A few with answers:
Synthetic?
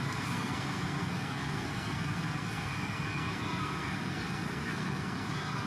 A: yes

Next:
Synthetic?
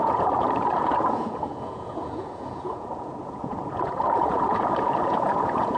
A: yes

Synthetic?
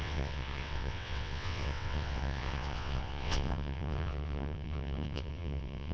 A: yes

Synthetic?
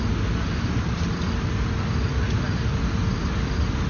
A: no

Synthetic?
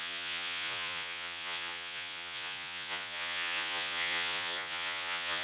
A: yes